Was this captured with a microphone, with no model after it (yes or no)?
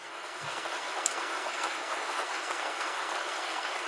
no